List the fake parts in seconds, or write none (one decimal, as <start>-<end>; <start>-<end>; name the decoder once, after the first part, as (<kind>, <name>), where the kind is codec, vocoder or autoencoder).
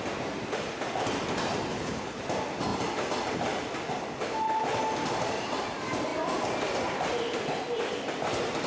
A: 1.7-2.2 (codec, HILCodec)